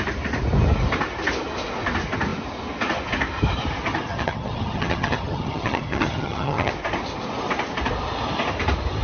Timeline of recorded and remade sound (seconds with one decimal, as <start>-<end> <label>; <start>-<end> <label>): 0.0-4.1 recorded; 4.1-6.7 remade; 6.7-9.0 recorded